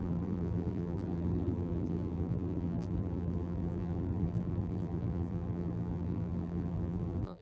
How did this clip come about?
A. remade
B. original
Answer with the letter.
A